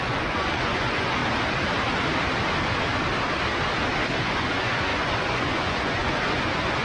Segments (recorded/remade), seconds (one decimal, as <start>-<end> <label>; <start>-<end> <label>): 0.0-1.2 remade; 1.2-4.2 recorded; 4.2-6.8 remade

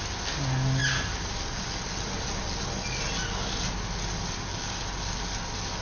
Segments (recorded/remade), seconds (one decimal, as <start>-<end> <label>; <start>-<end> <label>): 0.0-5.8 recorded

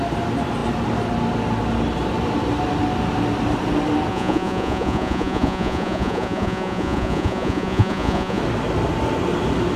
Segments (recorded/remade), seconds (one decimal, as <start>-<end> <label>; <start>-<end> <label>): 0.0-4.1 recorded; 4.1-8.4 remade; 8.4-9.8 recorded

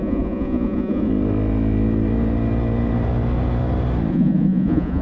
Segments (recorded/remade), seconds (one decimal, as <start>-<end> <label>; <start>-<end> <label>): 0.0-1.1 remade; 1.1-4.1 recorded; 4.1-5.0 remade

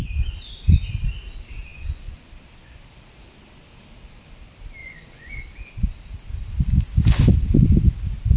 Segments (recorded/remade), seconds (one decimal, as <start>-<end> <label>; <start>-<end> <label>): 0.0-1.7 recorded; 1.7-2.3 remade; 2.3-4.8 recorded; 4.8-5.4 remade; 5.4-8.4 recorded

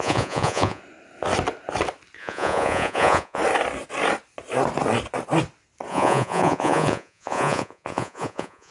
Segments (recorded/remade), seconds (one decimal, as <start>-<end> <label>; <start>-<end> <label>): 0.0-0.8 remade; 0.8-2.2 recorded; 2.2-3.4 remade; 3.4-5.9 recorded; 5.9-8.7 remade

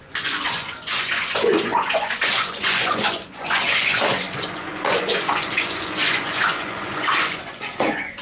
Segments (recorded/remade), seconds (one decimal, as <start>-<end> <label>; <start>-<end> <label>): 0.0-8.2 remade